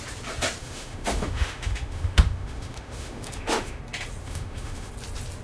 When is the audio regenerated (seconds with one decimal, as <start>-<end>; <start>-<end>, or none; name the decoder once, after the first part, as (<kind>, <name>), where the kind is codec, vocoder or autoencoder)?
0.6-3.8 (autoencoder, DAC-VAE); 4.2-4.9